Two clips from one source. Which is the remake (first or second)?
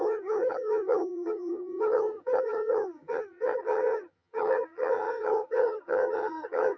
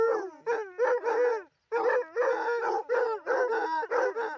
first